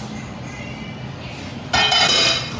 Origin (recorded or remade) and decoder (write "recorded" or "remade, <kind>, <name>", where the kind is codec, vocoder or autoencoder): recorded